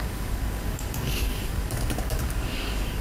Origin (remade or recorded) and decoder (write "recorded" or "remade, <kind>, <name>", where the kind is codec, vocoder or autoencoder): remade, codec, DAC